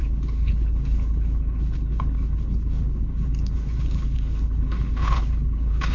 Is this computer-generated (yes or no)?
yes